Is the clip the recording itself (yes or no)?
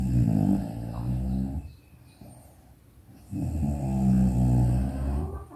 yes